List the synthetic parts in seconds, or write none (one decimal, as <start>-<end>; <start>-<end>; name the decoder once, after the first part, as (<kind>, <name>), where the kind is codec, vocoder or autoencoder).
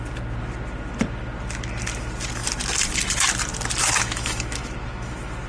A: 3.8-5.5 (autoencoder, DAC-VAE)